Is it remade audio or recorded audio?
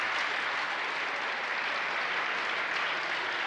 recorded